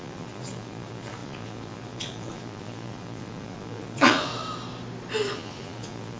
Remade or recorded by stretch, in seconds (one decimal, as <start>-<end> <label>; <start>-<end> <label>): 0.0-4.3 remade; 4.3-5.3 recorded; 5.3-6.2 remade